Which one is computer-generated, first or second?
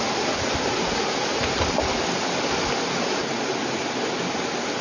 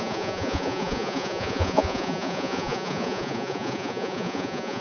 second